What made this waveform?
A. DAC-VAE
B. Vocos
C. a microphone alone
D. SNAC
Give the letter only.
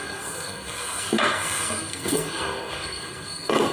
D